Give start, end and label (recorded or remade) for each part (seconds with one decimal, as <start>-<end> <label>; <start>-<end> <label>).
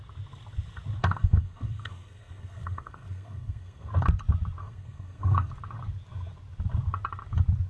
0.0-1.0 recorded; 1.0-3.9 remade; 3.9-4.6 recorded; 4.6-5.5 remade; 5.5-7.7 recorded